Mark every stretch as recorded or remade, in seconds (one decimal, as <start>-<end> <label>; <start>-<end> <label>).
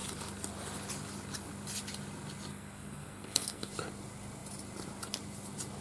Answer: 0.0-2.5 recorded; 2.5-3.7 remade; 3.7-5.8 recorded